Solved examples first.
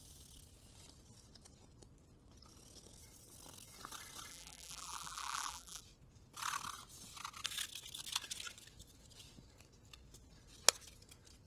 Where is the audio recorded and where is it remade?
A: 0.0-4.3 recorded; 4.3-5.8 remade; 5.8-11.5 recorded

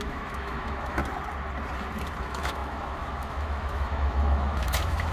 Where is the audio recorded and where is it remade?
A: 0.0-1.0 remade; 1.0-2.2 recorded; 2.2-5.1 remade